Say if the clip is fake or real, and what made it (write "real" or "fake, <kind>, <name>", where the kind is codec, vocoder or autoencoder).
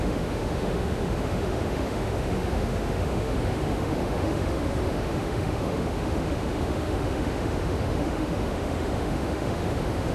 fake, autoencoder, DAC-VAE